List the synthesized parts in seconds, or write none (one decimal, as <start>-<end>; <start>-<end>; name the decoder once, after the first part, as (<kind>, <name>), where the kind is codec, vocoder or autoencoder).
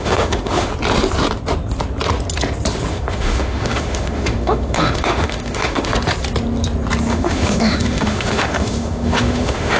0.0-0.7 (autoencoder, DAC-VAE); 2.9-5.9; 7.1-9.8